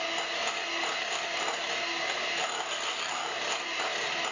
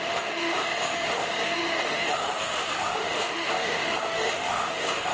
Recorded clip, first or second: first